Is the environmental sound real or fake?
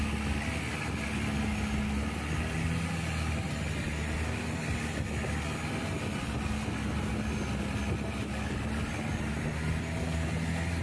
real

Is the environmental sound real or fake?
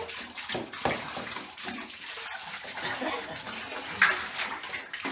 real